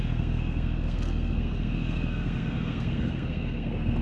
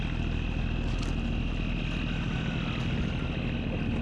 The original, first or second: second